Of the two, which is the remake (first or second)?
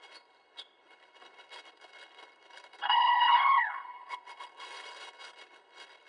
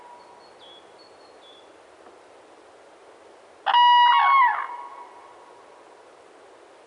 first